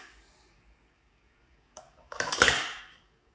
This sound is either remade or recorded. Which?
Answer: remade